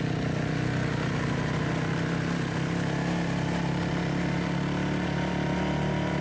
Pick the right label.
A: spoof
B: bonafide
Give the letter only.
B